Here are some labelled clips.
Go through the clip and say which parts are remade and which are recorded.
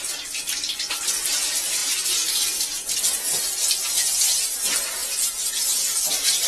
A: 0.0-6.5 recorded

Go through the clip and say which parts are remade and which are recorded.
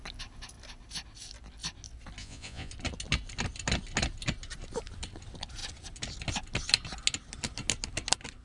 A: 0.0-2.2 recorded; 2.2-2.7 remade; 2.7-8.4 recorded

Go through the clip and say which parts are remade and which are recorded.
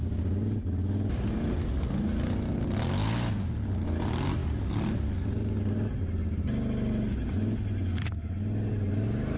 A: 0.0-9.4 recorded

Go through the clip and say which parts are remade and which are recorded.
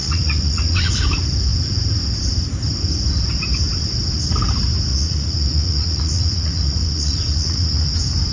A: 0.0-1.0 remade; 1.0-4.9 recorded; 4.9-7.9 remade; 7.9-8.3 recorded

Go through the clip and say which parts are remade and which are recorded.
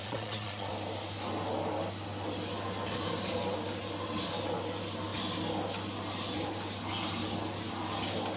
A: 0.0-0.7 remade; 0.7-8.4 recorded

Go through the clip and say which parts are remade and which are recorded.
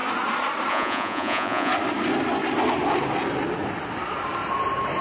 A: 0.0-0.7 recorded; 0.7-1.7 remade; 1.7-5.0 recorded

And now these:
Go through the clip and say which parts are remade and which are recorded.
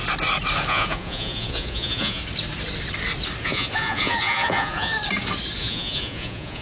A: 0.0-0.7 recorded; 0.7-2.2 remade; 2.2-3.4 recorded; 3.4-4.9 remade; 4.9-5.6 recorded; 5.6-6.6 remade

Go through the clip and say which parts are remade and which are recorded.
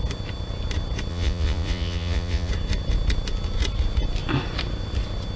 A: 0.0-1.1 recorded; 1.1-2.5 remade; 2.5-5.4 recorded